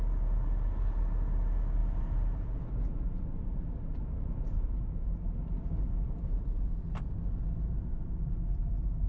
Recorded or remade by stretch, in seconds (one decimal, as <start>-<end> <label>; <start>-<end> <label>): 0.0-1.8 recorded; 1.8-6.7 remade; 6.7-9.1 recorded